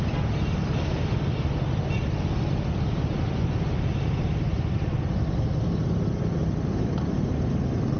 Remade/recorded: recorded